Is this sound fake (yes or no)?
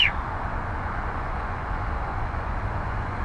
yes